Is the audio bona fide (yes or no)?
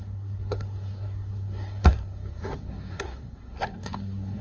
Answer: no